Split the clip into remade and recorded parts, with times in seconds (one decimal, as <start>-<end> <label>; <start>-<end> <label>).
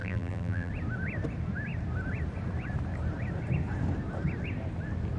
0.0-0.7 remade; 0.7-5.2 recorded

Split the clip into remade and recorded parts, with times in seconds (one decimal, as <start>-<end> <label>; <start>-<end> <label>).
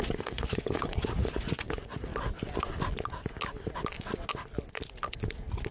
0.0-2.1 remade; 2.1-5.7 recorded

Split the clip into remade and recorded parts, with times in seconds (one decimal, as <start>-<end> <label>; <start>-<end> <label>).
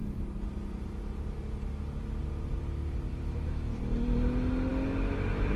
0.0-3.1 recorded; 3.1-3.8 remade; 3.8-5.6 recorded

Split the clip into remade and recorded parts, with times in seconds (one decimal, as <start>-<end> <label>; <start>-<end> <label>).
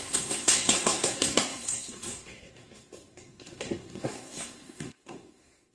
0.0-5.7 remade